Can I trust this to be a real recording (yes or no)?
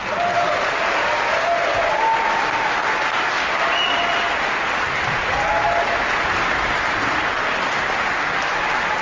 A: yes